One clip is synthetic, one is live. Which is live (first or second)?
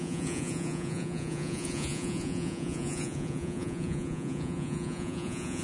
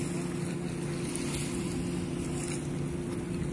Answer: second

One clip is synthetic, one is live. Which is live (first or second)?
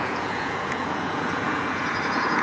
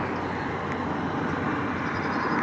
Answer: second